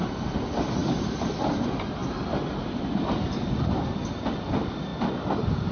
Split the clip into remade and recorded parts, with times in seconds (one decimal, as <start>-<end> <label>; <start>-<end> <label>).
0.0-2.0 remade; 2.0-4.5 recorded; 4.5-4.9 remade; 4.9-5.7 recorded